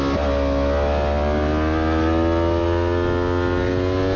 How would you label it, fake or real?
real